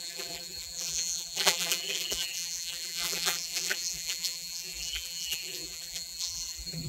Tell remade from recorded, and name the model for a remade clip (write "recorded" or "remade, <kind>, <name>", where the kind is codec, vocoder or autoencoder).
remade, vocoder, BigVGAN v2